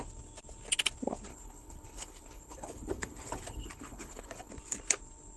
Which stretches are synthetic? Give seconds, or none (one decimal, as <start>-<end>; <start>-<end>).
1.3-4.5